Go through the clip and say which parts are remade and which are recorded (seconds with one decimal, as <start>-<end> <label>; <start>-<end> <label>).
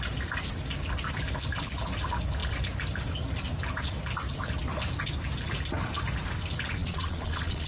0.0-6.8 recorded; 6.8-7.7 remade